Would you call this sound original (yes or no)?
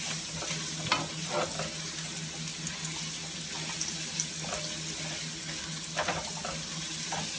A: yes